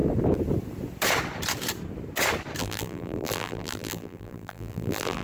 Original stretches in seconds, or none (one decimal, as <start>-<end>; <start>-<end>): 0.0-2.6